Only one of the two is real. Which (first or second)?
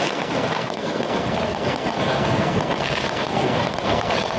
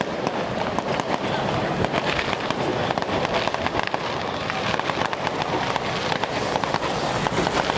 second